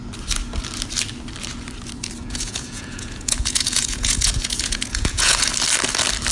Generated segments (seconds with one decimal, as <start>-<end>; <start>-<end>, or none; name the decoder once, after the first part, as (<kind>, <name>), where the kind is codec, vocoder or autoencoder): 2.2-5.5 (vocoder, Vocos)